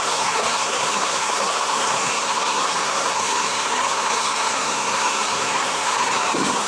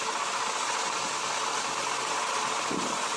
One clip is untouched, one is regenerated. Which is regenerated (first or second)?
first